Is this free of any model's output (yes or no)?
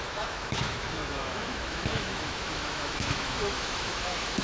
no